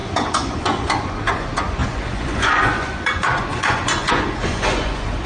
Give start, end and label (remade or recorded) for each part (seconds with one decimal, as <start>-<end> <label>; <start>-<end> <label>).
0.0-5.3 remade